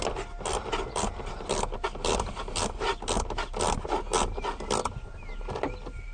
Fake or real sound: real